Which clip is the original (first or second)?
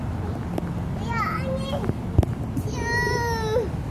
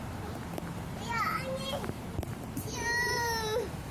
first